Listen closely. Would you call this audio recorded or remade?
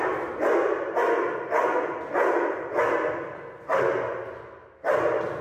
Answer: recorded